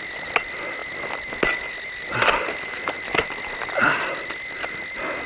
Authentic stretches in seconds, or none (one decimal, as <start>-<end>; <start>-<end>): 0.0-5.3